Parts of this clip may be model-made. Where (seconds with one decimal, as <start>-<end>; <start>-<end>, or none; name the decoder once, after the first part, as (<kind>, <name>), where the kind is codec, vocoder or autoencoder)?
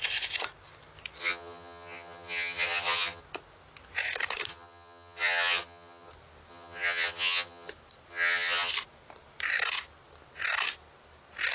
1.2-3.2 (vocoder, HiFi-GAN); 4.5-6.1; 6.5-7.7; 8.1-8.7